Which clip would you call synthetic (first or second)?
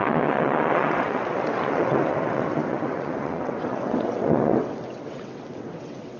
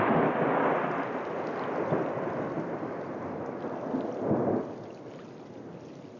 first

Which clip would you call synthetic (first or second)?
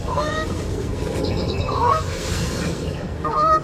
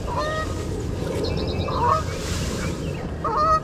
first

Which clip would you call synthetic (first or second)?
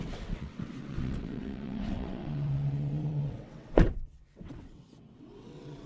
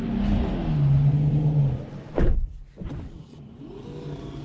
first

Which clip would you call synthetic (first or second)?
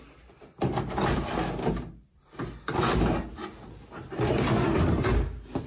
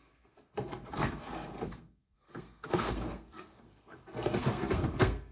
second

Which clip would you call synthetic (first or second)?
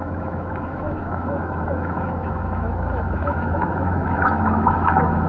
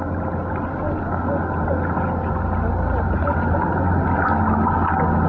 first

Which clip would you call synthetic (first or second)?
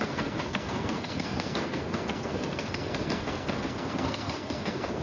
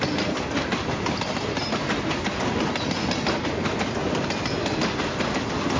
first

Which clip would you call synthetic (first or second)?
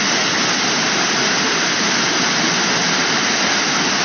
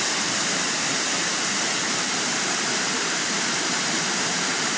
second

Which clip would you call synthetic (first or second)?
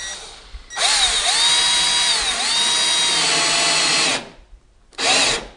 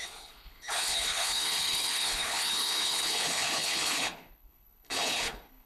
second